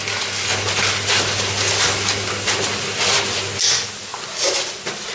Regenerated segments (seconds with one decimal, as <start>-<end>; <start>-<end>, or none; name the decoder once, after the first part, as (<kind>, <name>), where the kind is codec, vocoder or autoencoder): none